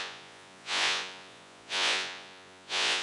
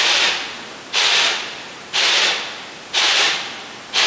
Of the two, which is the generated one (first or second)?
first